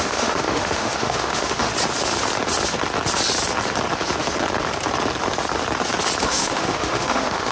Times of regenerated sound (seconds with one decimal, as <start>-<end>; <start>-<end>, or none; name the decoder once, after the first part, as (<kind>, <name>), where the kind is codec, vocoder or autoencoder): 0.0-1.7 (autoencoder, DAC-VAE); 6.2-7.5